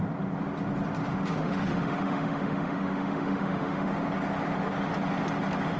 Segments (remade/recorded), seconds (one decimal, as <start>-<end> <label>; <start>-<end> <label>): 0.0-1.1 recorded; 1.1-3.9 remade; 3.9-5.8 recorded